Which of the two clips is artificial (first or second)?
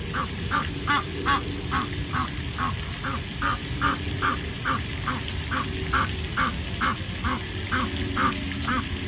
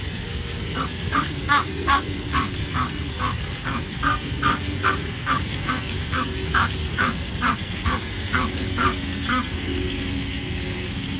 second